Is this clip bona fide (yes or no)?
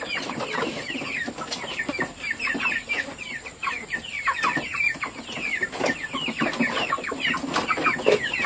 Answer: no